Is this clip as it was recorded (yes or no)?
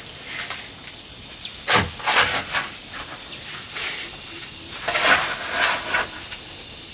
yes